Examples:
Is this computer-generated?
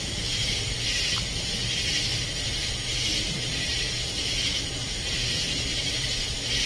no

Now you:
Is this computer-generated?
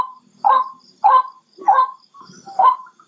no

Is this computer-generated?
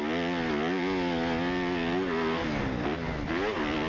no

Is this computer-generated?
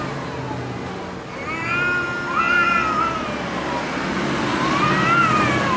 no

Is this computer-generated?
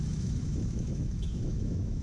yes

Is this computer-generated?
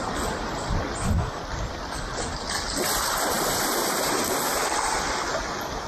no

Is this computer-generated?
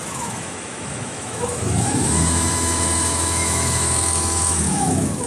yes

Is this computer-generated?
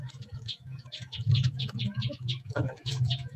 yes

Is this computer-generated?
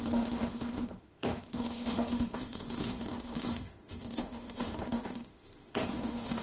yes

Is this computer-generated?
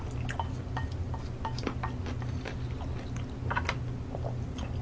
no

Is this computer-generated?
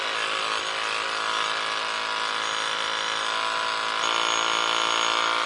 no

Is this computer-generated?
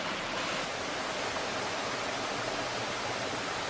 no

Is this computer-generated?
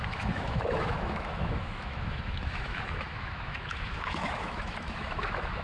yes